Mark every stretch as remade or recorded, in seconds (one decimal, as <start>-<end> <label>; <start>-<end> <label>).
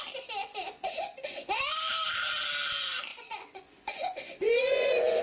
0.0-0.4 recorded; 0.4-1.5 remade; 1.5-3.1 recorded; 3.1-5.2 remade